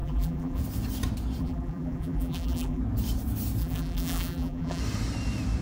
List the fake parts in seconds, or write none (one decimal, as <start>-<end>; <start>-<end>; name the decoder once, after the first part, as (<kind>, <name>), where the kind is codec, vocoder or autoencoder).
0.0-0.6 (vocoder, BigVGAN v2); 1.4-2.8; 3.6-4.8